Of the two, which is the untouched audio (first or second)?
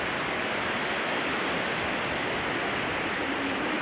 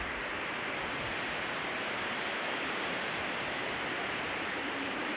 first